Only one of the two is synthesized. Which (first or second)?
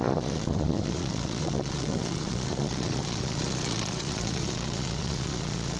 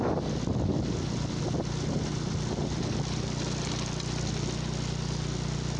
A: first